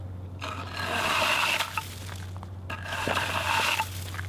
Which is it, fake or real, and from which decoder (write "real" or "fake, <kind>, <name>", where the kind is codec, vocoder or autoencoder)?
real